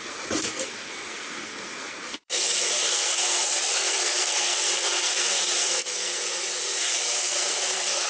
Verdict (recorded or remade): remade